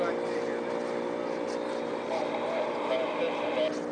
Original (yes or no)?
yes